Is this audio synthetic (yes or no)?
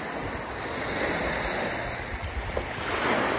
no